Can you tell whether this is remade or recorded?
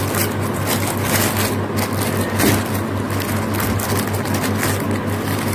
recorded